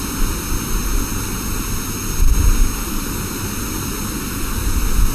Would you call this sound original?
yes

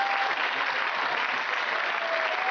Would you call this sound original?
yes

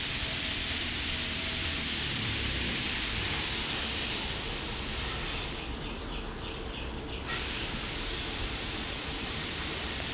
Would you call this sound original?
no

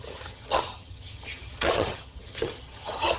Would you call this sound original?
no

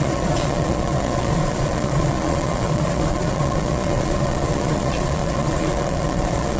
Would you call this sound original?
no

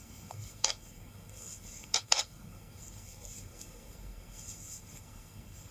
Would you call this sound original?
no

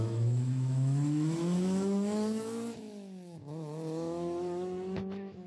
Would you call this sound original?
no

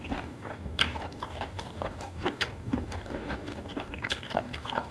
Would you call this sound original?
no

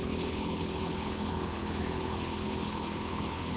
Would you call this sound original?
no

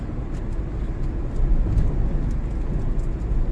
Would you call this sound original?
yes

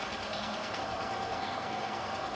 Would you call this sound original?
no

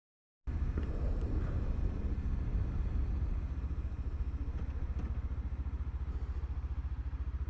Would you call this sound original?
yes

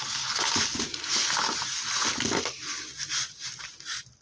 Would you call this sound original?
yes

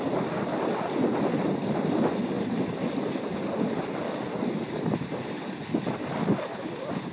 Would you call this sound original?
yes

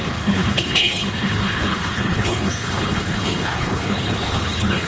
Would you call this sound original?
no